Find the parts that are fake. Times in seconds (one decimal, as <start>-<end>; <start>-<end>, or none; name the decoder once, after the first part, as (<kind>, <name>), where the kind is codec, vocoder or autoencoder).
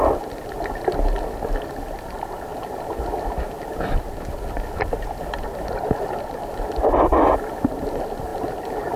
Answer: none